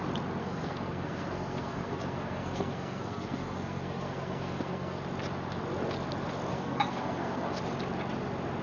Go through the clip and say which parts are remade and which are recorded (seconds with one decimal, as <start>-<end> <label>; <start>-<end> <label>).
0.0-0.4 recorded; 0.4-5.0 remade; 5.0-6.5 recorded; 6.5-7.6 remade; 7.6-8.6 recorded